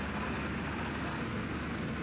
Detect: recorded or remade recorded